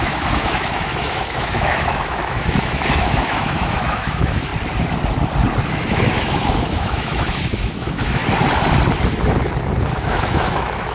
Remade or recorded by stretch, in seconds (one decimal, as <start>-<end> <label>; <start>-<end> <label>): 0.0-4.5 remade; 4.5-5.7 recorded; 5.7-8.2 remade; 8.2-9.8 recorded; 9.8-10.9 remade